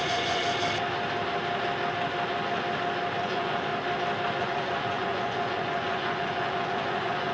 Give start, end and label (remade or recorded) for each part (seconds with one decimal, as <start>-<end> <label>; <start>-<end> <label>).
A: 0.0-0.4 remade; 0.4-3.2 recorded; 3.2-3.7 remade; 3.7-4.4 recorded; 4.4-7.3 remade